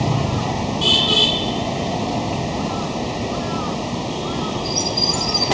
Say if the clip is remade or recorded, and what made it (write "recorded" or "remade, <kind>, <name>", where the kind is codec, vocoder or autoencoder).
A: recorded